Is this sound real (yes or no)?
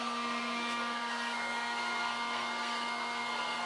no